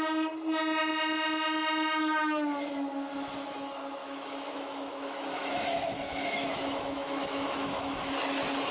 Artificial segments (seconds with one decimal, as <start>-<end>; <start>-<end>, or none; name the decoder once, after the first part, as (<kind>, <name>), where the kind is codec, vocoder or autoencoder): 4.0-8.1 (autoencoder, DAC-VAE)